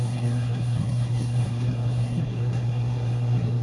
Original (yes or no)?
no